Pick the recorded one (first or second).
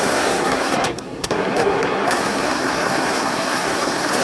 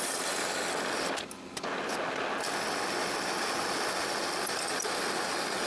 second